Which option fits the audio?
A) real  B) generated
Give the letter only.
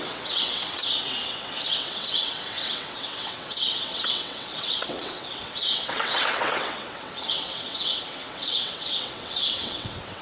B